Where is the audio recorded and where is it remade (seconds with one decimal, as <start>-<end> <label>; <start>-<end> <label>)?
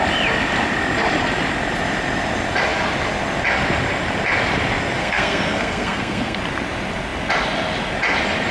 0.0-5.0 recorded; 5.0-6.4 remade; 6.4-8.5 recorded